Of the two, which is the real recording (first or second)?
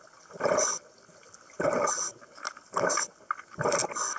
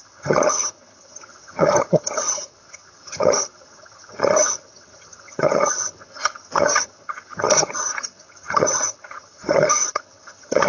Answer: first